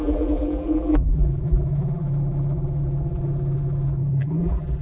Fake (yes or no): yes